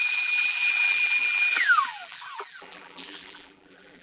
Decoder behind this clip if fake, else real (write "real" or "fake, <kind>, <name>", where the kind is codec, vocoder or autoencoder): fake, vocoder, BigVGAN v2